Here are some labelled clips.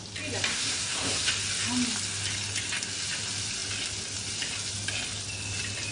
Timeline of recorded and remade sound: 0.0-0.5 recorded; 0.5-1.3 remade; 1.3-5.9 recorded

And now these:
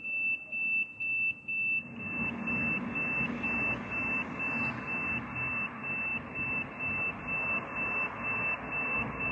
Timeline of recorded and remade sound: 0.0-9.3 recorded

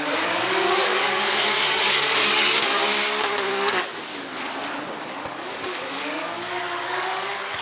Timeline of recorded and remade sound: 0.0-2.8 remade; 2.8-3.5 recorded; 3.5-3.9 remade; 3.9-5.0 recorded; 5.0-7.6 remade